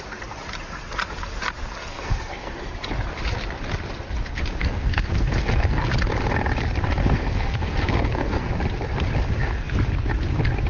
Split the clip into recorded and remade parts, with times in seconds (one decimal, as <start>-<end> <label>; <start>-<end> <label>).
0.0-1.9 recorded; 1.9-2.7 remade; 2.7-4.6 recorded; 4.6-5.8 remade; 5.8-7.0 recorded; 7.0-8.5 remade; 8.5-10.7 recorded